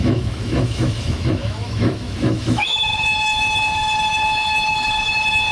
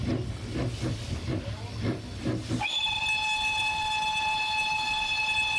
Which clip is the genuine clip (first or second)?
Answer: second